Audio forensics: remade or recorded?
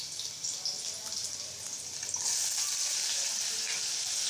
recorded